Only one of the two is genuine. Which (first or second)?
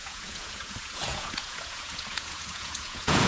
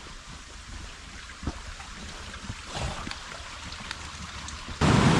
second